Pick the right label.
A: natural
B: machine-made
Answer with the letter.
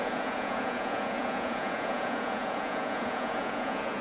B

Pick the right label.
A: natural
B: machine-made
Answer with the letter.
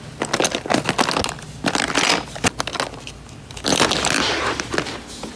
A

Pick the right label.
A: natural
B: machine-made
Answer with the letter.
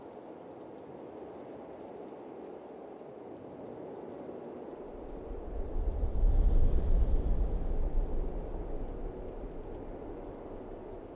A